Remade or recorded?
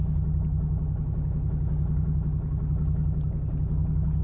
recorded